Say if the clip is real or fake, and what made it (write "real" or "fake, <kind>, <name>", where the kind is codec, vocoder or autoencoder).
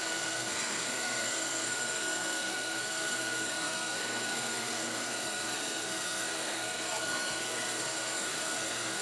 fake, codec, SNAC